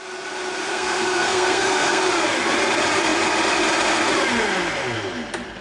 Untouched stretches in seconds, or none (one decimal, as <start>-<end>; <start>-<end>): 0.0-0.7; 2.0-5.6

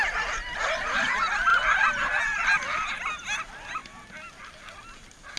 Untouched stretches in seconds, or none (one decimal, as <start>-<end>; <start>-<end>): 0.0-5.4

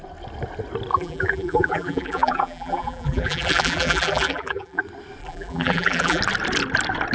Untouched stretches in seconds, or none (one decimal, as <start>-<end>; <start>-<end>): 0.0-0.9; 4.8-5.2; 6.2-7.1

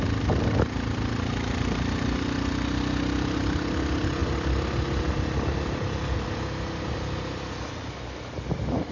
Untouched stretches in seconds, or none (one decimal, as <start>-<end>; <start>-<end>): 0.0-8.9

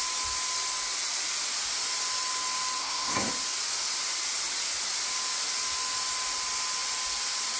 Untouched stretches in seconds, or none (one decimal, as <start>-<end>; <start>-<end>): 0.0-2.8; 3.3-7.6

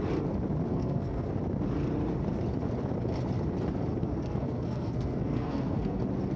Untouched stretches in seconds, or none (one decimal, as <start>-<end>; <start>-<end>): 0.0-0.7; 1.3-3.9; 6.0-6.4

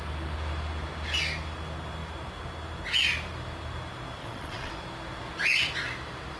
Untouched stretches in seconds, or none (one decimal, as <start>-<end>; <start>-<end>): 0.0-4.2; 4.7-6.4